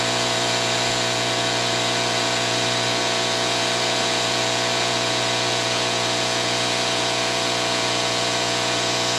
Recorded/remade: remade